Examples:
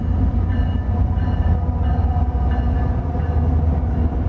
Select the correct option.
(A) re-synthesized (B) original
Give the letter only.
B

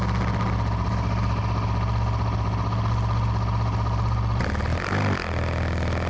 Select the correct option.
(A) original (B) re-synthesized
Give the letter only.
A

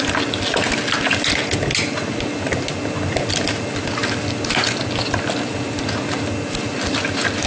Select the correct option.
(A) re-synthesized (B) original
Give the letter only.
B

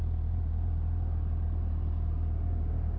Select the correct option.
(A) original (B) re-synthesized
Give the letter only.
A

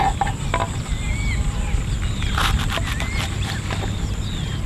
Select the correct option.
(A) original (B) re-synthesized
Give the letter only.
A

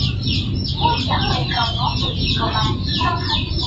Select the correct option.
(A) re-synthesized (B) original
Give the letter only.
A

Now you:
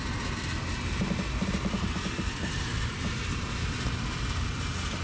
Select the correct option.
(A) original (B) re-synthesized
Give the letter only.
A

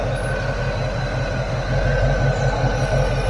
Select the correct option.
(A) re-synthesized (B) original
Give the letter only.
B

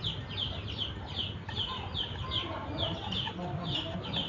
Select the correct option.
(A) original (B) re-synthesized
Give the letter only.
A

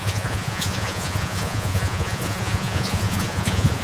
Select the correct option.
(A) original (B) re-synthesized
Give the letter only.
B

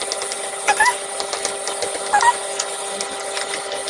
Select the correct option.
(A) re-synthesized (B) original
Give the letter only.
B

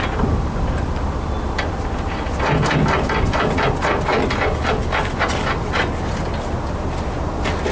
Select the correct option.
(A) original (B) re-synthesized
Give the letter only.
A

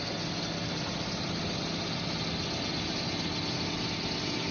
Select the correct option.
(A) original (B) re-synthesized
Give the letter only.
A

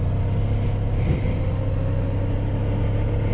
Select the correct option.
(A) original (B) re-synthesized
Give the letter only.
A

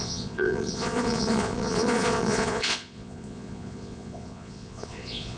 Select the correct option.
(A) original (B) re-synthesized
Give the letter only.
B